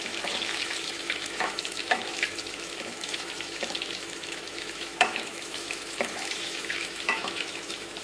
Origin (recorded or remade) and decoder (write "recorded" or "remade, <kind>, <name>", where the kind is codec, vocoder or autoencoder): remade, autoencoder, DAC-VAE